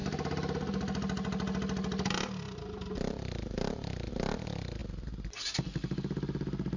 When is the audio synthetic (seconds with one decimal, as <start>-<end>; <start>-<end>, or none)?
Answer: none